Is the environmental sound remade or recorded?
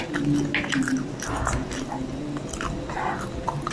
recorded